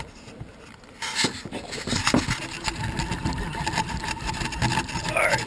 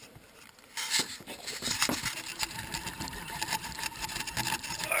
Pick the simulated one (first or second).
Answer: second